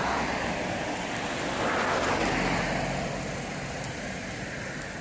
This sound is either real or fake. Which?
real